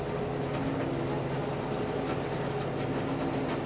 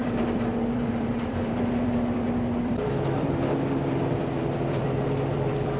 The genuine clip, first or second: first